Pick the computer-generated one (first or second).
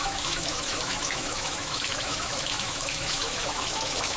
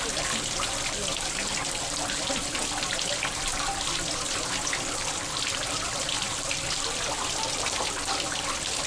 first